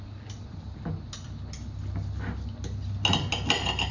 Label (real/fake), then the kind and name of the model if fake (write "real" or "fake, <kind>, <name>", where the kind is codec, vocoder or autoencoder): real